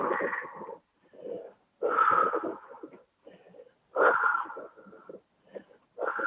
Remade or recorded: recorded